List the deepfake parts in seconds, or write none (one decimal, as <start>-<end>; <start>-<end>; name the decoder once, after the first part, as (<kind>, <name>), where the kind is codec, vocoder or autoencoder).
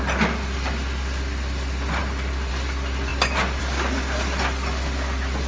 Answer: none